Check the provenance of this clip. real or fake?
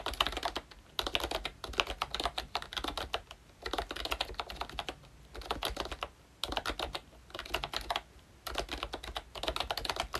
real